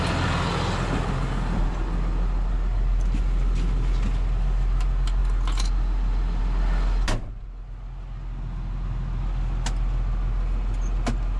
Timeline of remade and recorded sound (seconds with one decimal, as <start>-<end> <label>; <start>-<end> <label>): 0.0-11.4 recorded